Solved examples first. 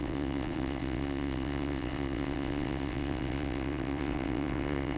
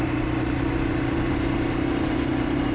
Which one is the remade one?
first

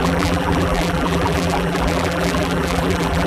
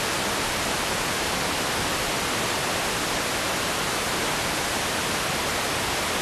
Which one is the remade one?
first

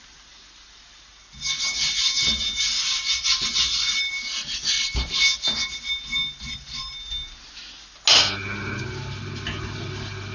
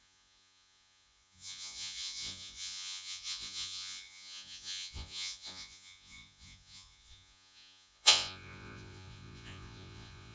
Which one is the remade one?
second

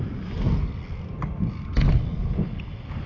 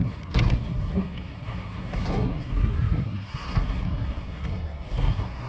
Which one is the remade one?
second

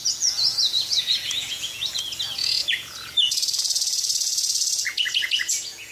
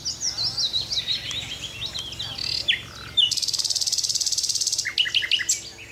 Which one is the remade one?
first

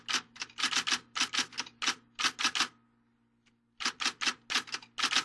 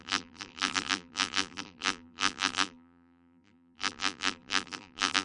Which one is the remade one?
second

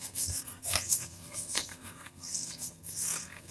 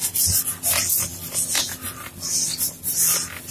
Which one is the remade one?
first